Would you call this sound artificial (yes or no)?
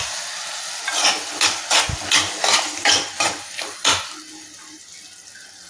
no